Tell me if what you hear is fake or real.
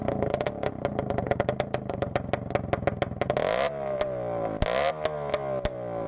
real